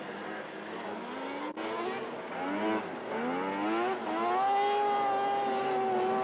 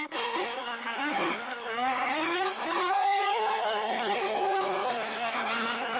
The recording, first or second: first